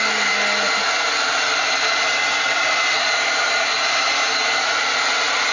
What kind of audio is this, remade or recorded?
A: recorded